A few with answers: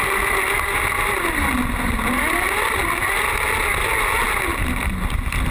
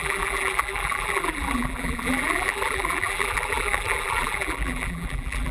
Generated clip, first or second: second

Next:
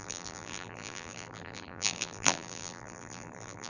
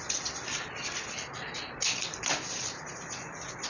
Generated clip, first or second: first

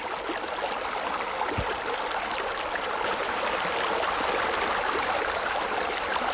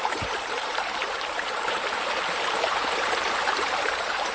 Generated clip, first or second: second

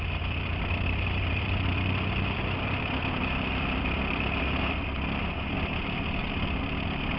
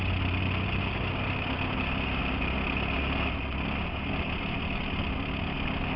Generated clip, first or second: first